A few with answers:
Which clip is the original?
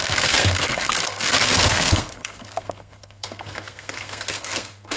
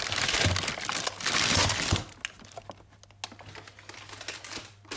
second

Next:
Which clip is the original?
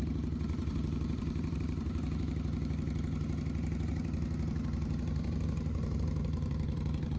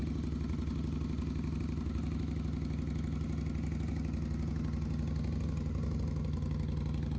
second